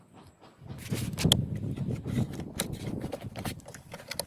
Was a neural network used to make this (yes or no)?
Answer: no